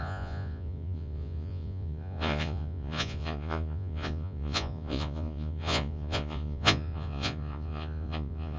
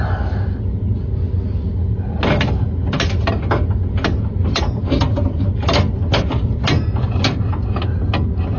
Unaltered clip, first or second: second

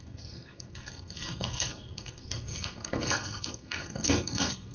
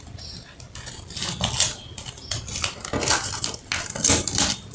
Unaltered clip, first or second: second